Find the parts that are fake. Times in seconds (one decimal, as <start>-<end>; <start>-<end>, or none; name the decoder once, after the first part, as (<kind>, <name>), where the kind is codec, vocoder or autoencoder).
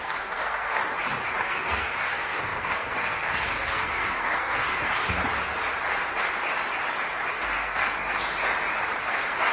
0.0-0.8 (codec, SNAC); 1.4-5.0; 7.3-8.2; 9.0-9.5